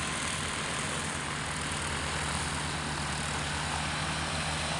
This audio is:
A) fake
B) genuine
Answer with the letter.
B